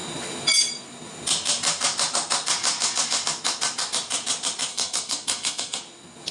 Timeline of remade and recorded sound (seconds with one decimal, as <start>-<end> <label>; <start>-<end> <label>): 0.0-4.7 recorded; 4.7-5.8 remade; 5.8-6.3 recorded